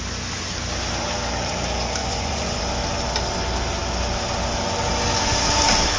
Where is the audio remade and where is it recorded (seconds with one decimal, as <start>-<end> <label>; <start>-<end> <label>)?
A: 0.0-2.0 recorded; 2.0-2.6 remade; 2.6-6.0 recorded